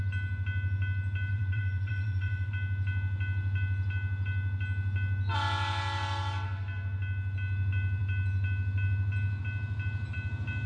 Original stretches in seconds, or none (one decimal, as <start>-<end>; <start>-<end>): 0.0-1.3; 2.5-10.7

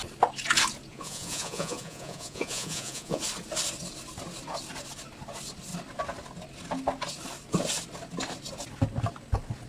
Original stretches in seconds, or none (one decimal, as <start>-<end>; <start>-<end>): 0.0-0.9; 3.2-9.7

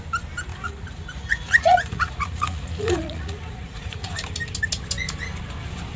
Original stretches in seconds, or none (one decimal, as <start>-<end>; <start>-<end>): 0.0-0.5; 4.1-6.0

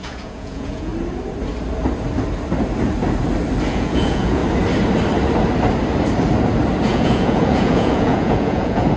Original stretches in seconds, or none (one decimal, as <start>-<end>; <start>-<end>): 0.9-3.7; 4.4-6.9